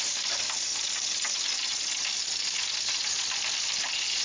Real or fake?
real